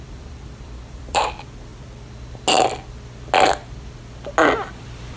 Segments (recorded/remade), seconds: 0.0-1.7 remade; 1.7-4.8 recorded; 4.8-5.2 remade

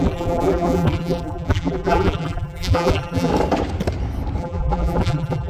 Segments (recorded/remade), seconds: 0.0-3.3 remade; 3.3-4.4 recorded; 4.4-5.5 remade

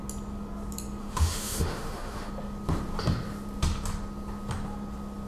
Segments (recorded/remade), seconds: 0.0-1.0 recorded; 1.0-2.3 remade; 2.3-5.3 recorded

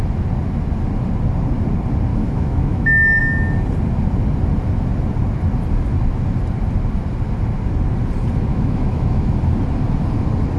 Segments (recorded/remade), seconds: 0.0-2.1 recorded; 2.1-3.2 remade; 3.2-8.5 recorded; 8.5-9.3 remade; 9.3-10.6 recorded

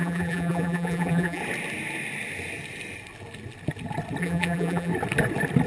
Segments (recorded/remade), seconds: 0.0-1.4 remade; 1.4-4.2 recorded; 4.2-4.9 remade; 4.9-5.7 recorded

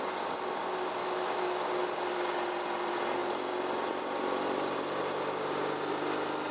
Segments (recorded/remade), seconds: 0.0-1.0 recorded; 1.0-1.7 remade; 1.7-6.5 recorded